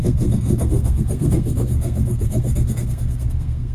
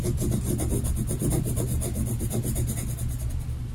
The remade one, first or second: first